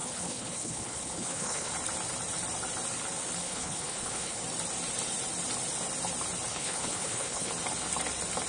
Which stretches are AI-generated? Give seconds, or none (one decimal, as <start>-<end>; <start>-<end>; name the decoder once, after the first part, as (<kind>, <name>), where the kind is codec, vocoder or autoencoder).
0.0-1.7 (codec, HILCodec); 3.4-4.4; 6.5-7.5